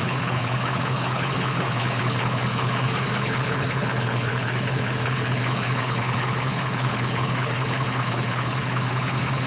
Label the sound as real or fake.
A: fake